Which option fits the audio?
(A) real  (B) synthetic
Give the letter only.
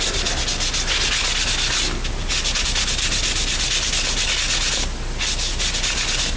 A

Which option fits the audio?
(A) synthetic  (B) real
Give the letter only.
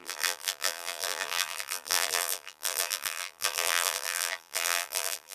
A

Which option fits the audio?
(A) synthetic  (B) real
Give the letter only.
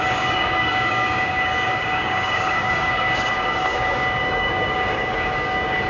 A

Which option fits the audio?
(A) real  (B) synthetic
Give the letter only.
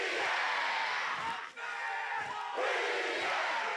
A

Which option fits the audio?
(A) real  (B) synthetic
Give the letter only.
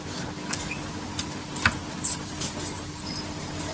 A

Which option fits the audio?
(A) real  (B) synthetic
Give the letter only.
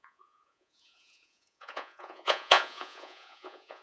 B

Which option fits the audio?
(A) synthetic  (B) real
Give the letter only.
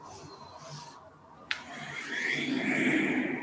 B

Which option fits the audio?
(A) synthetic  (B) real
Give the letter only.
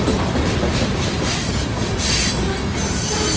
B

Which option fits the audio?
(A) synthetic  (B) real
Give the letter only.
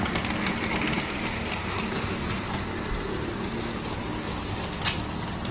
B